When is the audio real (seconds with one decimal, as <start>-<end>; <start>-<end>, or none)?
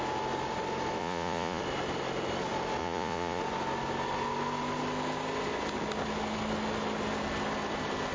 0.0-1.0; 1.6-2.8; 3.4-8.1